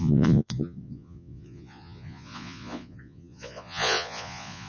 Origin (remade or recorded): remade